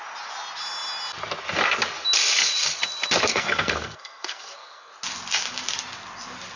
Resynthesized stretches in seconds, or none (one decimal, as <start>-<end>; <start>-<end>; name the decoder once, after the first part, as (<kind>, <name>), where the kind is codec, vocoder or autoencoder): 3.3-4.9 (codec, SNAC)